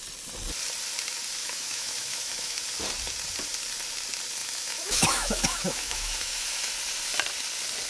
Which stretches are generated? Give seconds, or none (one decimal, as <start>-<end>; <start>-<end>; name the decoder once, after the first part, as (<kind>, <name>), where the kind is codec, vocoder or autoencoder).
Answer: 1.4-2.6 (autoencoder, DAC-VAE); 4.4-6.7